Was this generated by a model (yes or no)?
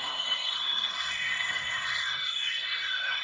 yes